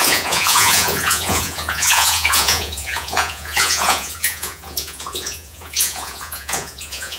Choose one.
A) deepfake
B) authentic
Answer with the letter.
A